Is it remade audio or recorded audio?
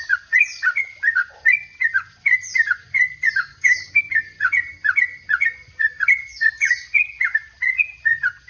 remade